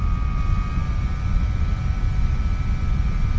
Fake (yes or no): no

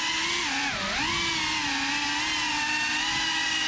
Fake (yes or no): no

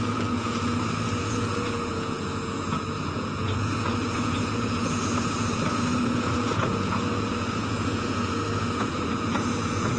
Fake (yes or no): yes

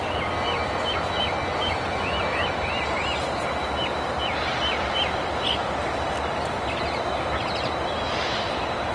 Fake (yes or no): no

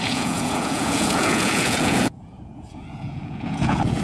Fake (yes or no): yes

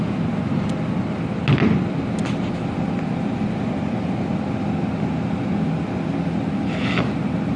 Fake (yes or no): no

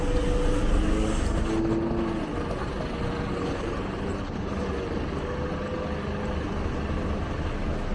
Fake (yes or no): no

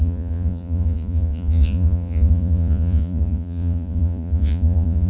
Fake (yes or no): yes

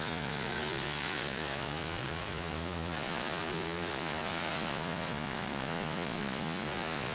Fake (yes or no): yes